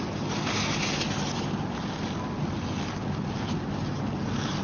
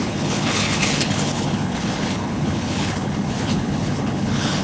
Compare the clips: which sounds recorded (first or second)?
first